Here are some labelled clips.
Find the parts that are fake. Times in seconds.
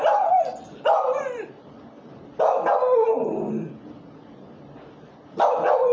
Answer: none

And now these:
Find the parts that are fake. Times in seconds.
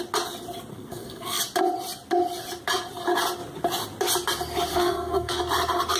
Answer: 0.7-1.4 (codec, SNAC); 4.7-5.4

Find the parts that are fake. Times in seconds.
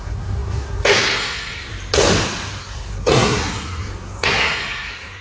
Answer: 0.0-1.7 (codec, SNAC); 2.6-5.2